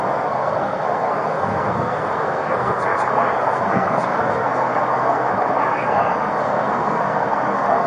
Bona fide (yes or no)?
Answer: no